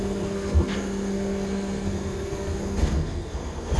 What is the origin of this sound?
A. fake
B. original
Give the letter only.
A